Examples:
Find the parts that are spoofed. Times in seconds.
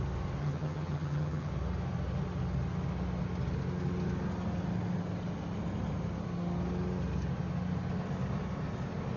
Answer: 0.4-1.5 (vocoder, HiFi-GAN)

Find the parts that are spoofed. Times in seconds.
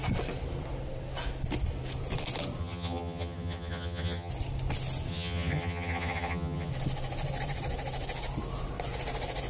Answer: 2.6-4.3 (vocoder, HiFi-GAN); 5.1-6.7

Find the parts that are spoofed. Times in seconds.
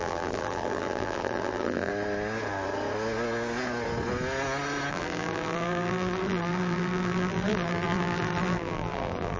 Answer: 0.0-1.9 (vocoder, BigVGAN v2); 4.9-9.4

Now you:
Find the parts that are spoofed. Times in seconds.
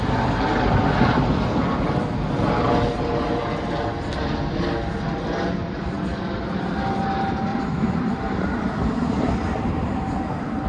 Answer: 5.6-6.2 (vocoder, BigVGAN v2); 7.5-9.7